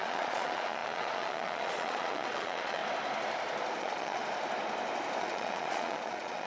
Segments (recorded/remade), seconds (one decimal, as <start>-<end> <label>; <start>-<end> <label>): 0.0-2.8 remade; 2.8-3.8 recorded; 3.8-4.2 remade; 4.2-5.2 recorded; 5.2-6.5 remade